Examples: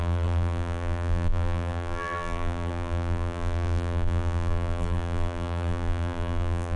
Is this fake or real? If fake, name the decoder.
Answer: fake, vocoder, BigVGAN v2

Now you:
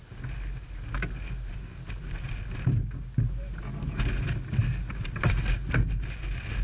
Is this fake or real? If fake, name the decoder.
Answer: real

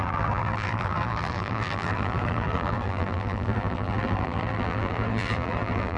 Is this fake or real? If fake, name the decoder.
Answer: fake, vocoder, BigVGAN v2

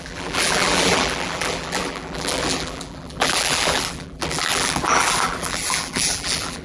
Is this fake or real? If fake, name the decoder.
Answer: fake, vocoder, BigVGAN v2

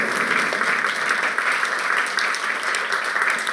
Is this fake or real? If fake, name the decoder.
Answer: real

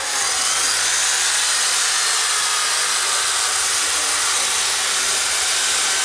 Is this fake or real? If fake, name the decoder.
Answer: real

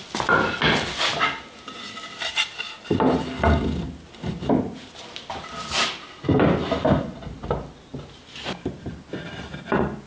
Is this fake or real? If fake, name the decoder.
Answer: real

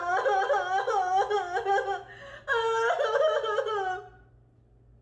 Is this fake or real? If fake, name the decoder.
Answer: real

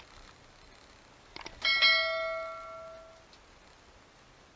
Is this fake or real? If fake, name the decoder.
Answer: real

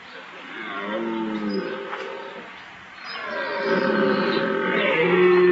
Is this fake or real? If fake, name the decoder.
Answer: real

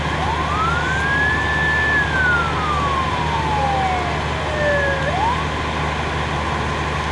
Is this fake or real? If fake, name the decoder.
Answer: real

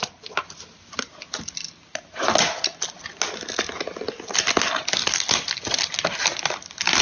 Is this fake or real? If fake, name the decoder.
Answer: real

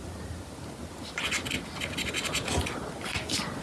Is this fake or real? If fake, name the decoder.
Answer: real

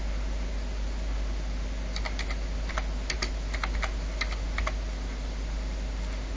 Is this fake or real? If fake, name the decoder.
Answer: real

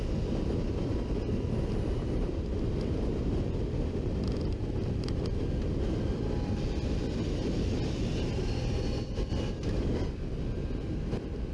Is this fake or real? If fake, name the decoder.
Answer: real